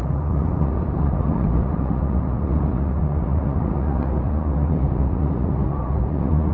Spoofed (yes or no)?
yes